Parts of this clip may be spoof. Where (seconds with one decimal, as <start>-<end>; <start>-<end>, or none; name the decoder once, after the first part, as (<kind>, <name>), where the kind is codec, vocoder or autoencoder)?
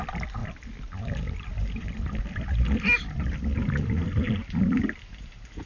none